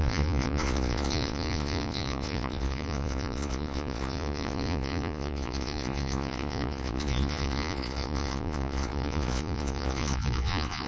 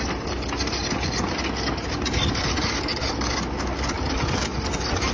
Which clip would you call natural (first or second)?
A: second